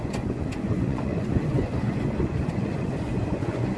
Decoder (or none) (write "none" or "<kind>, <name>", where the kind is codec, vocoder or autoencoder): vocoder, Vocos